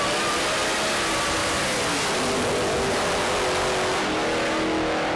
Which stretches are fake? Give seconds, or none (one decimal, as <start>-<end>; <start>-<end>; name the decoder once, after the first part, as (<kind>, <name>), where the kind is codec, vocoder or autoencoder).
none